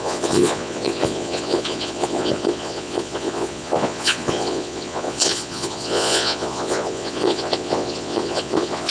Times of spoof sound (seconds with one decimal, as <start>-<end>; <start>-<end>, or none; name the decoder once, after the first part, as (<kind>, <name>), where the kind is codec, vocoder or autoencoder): 0.0-8.9 (vocoder, Vocos)